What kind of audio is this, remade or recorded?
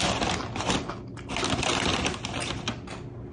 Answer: recorded